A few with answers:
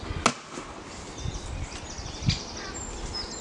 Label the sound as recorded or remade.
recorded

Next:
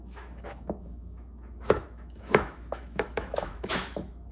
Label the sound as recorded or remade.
remade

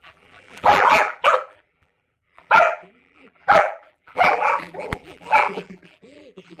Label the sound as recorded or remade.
remade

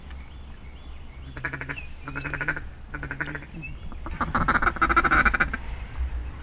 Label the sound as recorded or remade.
recorded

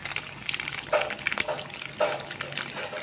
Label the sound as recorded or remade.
recorded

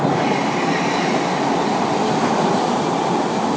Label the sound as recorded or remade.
recorded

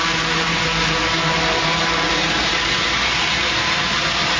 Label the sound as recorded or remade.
remade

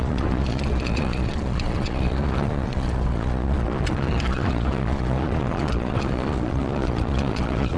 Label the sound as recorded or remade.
remade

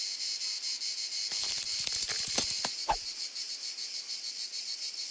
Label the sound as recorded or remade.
recorded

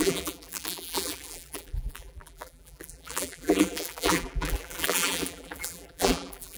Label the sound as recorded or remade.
remade